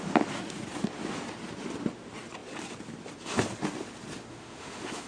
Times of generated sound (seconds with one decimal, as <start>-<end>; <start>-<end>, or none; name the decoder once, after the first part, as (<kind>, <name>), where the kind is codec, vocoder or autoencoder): 4.3-5.1 (autoencoder, DAC-VAE)